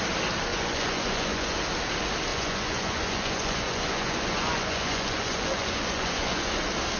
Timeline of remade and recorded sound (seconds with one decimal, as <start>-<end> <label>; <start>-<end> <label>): 0.0-0.5 recorded; 0.5-1.6 remade; 1.6-2.3 recorded; 2.3-6.5 remade; 6.5-7.0 recorded